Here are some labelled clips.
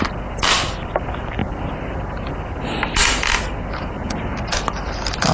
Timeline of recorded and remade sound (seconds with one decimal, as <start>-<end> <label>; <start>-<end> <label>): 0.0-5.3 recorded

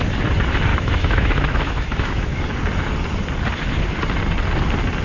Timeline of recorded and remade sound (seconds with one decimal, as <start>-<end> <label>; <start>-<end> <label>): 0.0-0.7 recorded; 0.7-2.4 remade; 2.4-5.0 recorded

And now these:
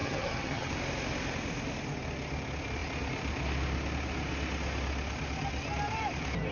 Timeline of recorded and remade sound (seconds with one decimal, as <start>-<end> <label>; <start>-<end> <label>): 0.0-0.7 remade; 0.7-6.5 recorded